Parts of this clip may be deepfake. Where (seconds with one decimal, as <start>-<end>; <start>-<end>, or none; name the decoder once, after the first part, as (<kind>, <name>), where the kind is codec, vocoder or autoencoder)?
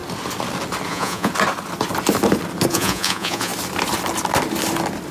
0.9-1.3 (vocoder, Vocos); 2.7-3.5